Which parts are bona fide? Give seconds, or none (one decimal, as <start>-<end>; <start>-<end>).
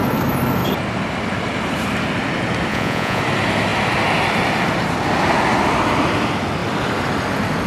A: 0.0-2.7; 3.2-7.7